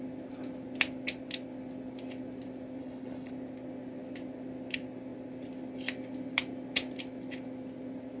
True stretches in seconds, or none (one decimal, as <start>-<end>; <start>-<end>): 0.0-2.8; 3.3-8.2

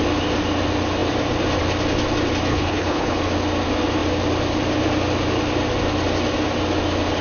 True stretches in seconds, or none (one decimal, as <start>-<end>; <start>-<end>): 0.0-2.5; 3.2-7.2

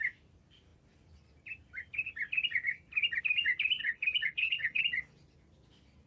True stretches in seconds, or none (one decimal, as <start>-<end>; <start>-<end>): 0.0-3.8; 4.8-6.1

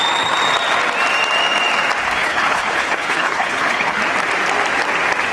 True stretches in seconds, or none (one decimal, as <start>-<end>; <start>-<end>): 0.0-2.2; 4.0-5.3

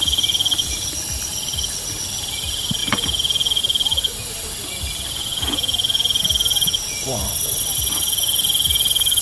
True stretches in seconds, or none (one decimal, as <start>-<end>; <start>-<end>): 0.0-9.2

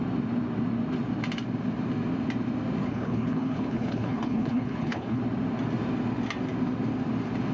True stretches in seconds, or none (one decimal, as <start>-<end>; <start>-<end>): 0.0-2.8; 5.2-7.5

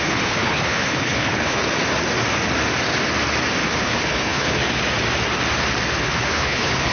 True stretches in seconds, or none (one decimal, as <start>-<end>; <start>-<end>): 1.6-3.7; 4.6-6.0